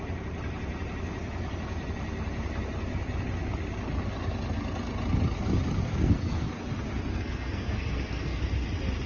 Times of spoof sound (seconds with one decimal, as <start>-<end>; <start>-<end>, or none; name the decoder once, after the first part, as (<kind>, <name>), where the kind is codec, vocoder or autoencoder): 5.9-6.5 (codec, SNAC); 7.1-8.4